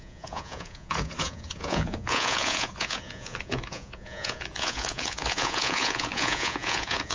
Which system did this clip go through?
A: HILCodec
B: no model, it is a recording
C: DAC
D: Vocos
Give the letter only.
D